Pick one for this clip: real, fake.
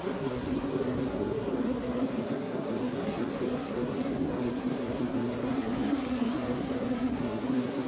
fake